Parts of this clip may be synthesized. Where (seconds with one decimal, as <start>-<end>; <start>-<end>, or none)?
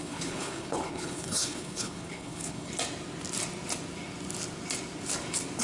0.0-2.7